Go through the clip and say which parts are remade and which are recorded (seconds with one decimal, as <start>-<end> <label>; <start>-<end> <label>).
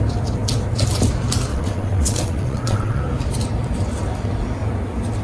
0.0-1.5 recorded; 1.5-3.0 remade; 3.0-5.2 recorded